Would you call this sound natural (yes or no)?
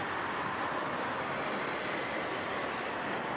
yes